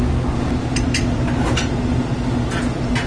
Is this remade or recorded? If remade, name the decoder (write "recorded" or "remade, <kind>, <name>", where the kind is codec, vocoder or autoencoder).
recorded